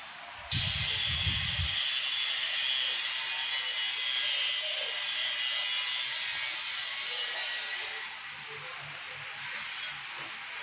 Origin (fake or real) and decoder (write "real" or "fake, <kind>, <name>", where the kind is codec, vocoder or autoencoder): real